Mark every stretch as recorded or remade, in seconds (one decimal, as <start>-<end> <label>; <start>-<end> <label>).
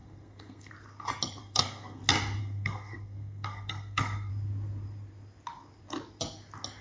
0.0-0.7 remade; 0.7-1.4 recorded; 1.4-2.0 remade; 2.0-2.4 recorded; 2.4-4.3 remade; 4.3-6.8 recorded